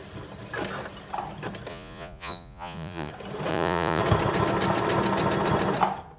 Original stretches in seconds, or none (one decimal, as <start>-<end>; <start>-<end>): 0.0-1.7; 3.1-3.5; 4.0-6.2